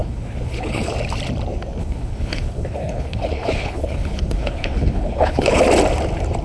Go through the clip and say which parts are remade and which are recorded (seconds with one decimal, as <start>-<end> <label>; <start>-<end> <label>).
0.0-0.9 remade; 0.9-1.8 recorded; 1.8-5.6 remade; 5.6-6.4 recorded